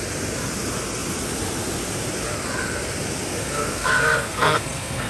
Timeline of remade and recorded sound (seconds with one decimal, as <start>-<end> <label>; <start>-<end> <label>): 0.0-3.3 recorded; 3.3-5.1 remade